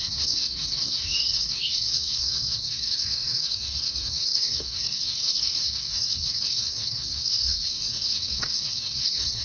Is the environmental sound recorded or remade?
remade